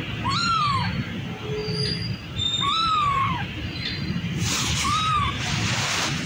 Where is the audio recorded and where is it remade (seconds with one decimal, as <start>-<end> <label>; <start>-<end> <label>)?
0.0-1.6 recorded; 1.6-5.4 remade; 5.4-6.3 recorded